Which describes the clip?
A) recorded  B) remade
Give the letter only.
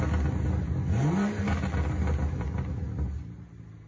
A